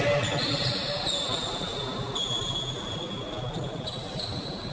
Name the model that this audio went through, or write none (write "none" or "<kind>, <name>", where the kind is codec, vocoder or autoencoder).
none